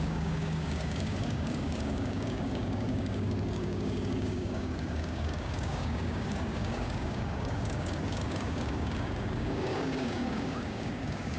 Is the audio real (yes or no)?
no